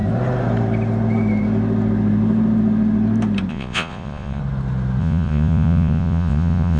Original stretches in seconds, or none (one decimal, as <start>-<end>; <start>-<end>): 0.0-3.5; 4.4-5.0